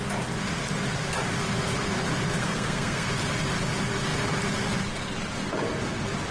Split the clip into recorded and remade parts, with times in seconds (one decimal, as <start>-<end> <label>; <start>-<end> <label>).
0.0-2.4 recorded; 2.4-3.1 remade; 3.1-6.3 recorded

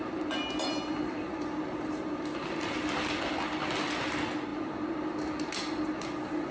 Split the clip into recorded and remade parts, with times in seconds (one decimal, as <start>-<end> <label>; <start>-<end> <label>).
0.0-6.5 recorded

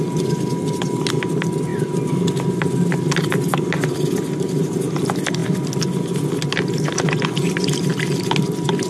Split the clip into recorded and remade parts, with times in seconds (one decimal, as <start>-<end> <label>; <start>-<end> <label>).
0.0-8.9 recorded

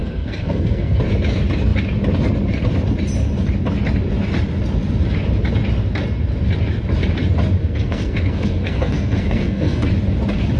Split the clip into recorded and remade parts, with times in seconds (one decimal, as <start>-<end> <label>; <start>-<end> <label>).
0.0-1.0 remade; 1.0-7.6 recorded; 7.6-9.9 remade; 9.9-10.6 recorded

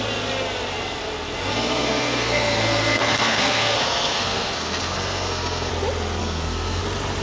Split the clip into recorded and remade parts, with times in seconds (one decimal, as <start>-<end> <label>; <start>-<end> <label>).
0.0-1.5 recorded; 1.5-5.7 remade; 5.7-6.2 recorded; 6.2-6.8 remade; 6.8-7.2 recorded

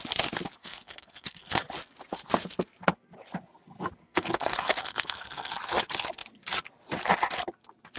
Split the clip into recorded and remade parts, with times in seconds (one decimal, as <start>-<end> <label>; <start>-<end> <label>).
0.0-0.6 recorded; 0.6-1.6 remade; 1.6-4.0 recorded; 4.0-5.5 remade; 5.5-8.0 recorded